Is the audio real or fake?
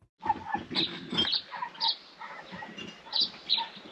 real